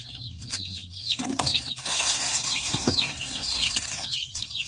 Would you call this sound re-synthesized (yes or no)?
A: yes